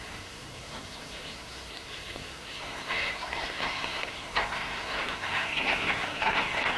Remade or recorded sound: remade